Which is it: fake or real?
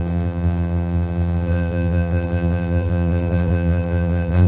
fake